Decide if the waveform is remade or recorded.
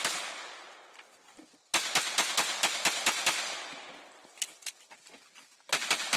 recorded